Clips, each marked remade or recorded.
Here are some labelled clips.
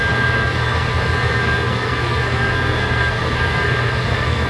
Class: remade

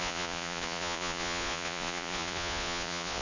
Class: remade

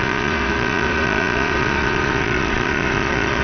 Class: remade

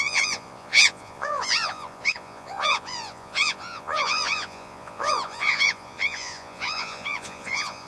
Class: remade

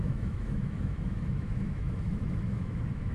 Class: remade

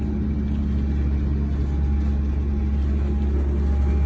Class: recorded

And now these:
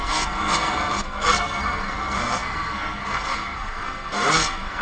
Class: remade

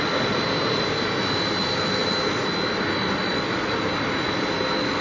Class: recorded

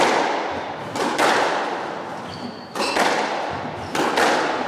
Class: recorded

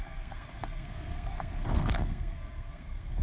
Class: remade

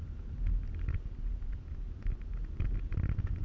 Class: recorded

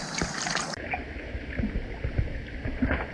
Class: recorded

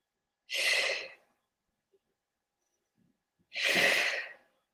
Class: recorded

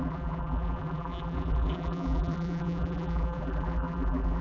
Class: remade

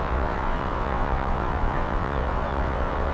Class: remade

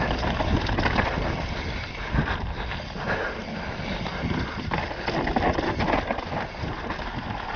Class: recorded